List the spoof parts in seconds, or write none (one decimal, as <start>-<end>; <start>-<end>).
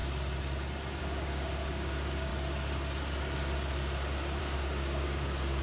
1.0-2.3; 4.4-5.6